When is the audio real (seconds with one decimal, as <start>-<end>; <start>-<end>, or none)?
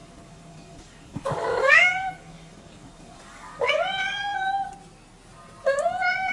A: 3.7-6.3